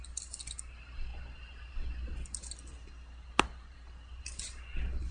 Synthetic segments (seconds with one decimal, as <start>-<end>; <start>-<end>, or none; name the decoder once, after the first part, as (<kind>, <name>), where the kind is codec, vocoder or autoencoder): none